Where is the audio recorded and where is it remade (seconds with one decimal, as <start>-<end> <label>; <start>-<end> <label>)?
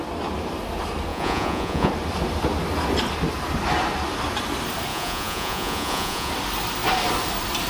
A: 0.0-1.1 recorded; 1.1-1.9 remade; 1.9-4.9 recorded; 4.9-6.3 remade; 6.3-7.7 recorded